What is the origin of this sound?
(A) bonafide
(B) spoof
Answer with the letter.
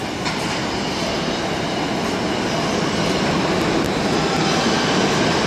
A